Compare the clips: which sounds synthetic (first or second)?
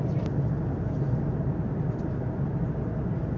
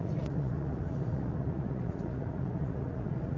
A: second